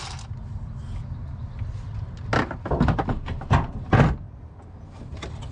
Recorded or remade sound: recorded